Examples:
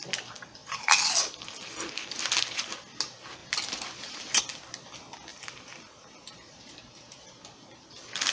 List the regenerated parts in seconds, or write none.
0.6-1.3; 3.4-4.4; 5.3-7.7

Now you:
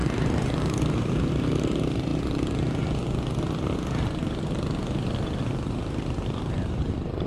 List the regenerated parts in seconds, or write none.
0.0-2.1; 5.5-7.3